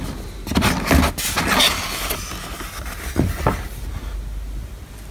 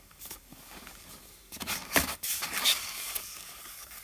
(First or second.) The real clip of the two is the first